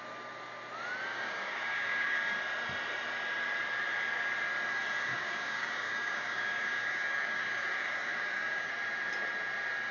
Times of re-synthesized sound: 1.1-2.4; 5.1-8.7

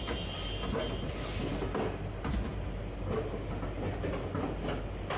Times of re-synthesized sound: none

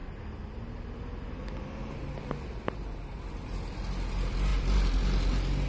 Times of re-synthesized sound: none

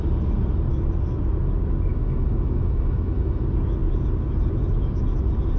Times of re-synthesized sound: 1.9-3.4

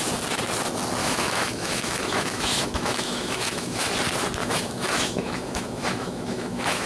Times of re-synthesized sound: 1.0-3.9; 4.4-6.9

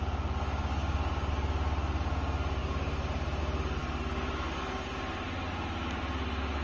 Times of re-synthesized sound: 0.7-1.3